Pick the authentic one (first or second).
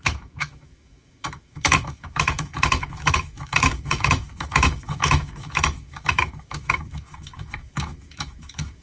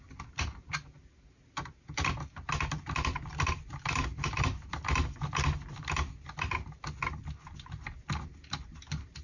second